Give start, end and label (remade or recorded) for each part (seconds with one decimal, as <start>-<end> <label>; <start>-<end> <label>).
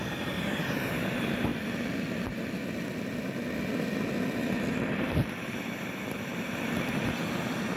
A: 0.0-1.5 remade; 1.5-4.9 recorded; 4.9-7.8 remade